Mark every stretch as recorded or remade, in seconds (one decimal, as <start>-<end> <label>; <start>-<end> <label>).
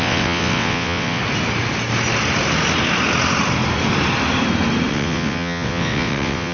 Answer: 0.0-1.2 remade; 1.2-4.9 recorded; 4.9-6.5 remade